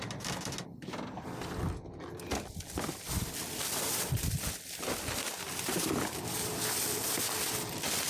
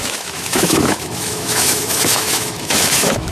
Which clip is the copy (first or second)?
second